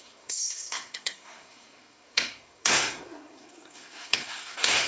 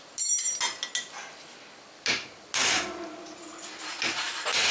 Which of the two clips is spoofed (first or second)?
first